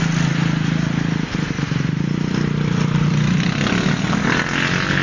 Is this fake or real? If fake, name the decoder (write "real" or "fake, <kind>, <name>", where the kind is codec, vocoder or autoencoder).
real